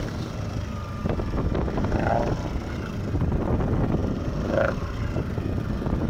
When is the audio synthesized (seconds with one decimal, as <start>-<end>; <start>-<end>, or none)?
none